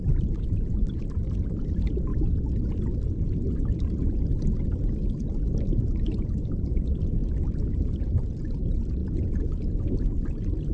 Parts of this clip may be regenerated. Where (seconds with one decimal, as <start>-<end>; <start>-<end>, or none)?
0.0-2.1; 5.6-7.2; 7.7-9.0